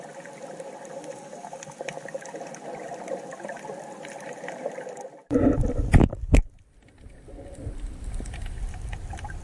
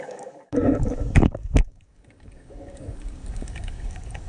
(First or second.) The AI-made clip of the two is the second